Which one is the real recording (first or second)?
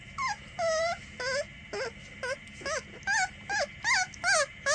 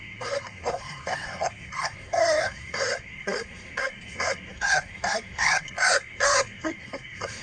first